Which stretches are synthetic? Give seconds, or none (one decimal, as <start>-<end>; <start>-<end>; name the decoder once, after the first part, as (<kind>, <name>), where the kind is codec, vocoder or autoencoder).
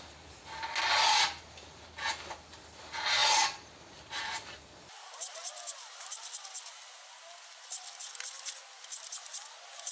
none